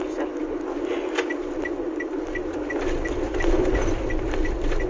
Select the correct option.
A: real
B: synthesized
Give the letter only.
A